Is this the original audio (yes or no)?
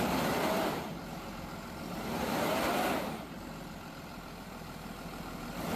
no